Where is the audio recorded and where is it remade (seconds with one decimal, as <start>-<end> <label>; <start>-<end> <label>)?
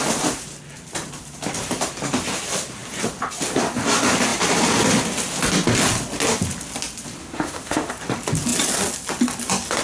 0.0-7.2 recorded; 7.2-7.9 remade; 7.9-9.8 recorded